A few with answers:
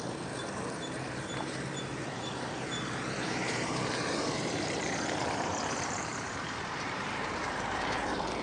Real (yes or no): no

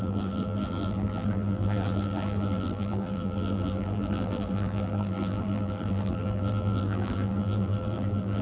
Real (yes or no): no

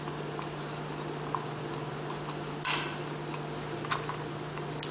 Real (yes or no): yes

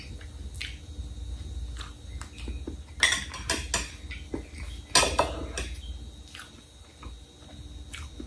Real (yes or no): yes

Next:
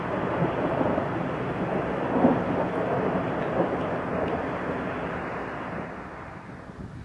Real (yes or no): yes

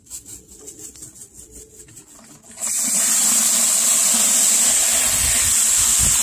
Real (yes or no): yes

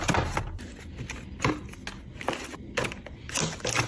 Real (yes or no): yes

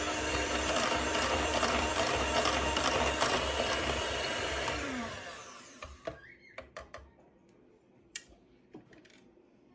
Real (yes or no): no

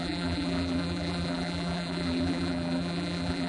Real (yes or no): no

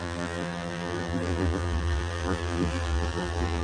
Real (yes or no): no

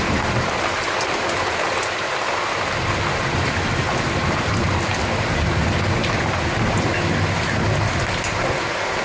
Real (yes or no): no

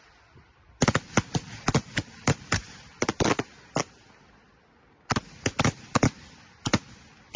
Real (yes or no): yes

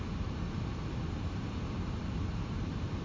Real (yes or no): no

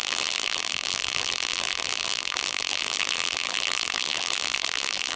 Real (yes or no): no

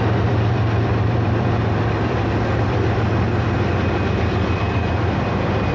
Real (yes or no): no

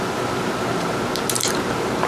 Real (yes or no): no